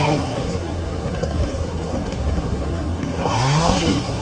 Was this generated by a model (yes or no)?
yes